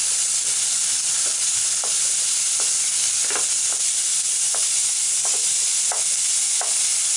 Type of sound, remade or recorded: recorded